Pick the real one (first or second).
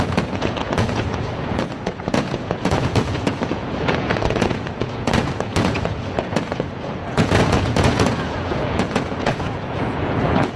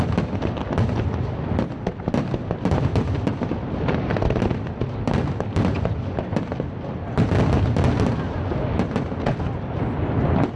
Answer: second